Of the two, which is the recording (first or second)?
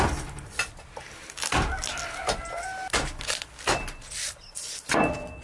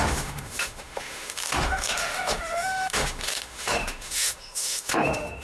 first